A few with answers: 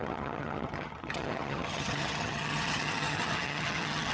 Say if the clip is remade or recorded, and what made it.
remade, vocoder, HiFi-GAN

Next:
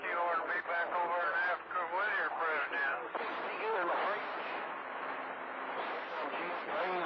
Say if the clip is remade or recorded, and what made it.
recorded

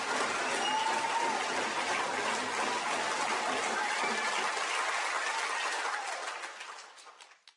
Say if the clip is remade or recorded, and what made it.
recorded